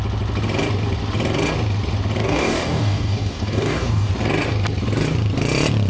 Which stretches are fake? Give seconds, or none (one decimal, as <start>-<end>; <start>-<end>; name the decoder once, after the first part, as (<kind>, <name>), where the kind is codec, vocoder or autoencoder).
2.2-4.1 (codec, DAC)